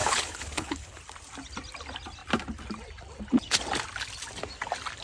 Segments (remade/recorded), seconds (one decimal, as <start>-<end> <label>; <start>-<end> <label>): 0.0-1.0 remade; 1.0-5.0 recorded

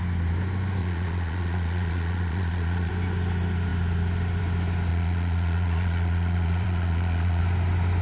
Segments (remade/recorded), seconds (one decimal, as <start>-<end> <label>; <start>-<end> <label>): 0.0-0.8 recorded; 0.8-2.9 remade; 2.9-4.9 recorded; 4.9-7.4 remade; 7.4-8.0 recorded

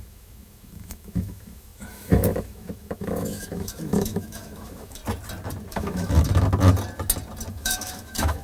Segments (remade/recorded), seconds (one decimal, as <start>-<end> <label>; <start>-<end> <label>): 0.0-5.0 remade; 5.0-5.7 recorded; 5.7-6.3 remade; 6.3-7.5 recorded; 7.5-8.4 remade

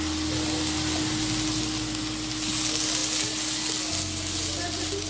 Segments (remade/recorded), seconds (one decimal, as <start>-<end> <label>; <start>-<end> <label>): 0.0-5.1 recorded

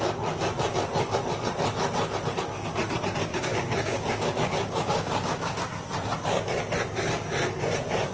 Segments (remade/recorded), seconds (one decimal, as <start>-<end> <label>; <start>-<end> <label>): 0.0-3.3 recorded; 3.3-5.7 remade; 5.7-8.1 recorded

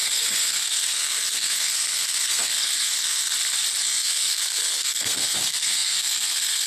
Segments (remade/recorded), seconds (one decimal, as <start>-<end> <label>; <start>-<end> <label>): 0.0-3.3 remade; 3.3-3.8 recorded; 3.8-6.7 remade